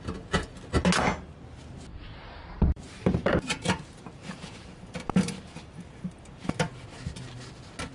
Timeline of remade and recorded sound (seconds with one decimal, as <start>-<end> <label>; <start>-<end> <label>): 0.0-1.9 recorded; 1.9-6.4 remade; 6.4-7.9 recorded